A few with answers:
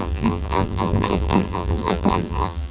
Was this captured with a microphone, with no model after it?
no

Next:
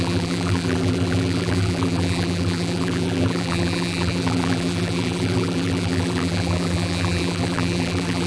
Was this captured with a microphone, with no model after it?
no